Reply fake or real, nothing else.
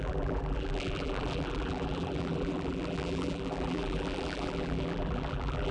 fake